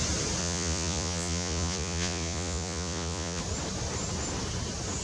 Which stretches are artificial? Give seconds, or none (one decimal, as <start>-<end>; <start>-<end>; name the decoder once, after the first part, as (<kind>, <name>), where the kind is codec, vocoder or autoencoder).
0.4-3.4 (vocoder, Vocos)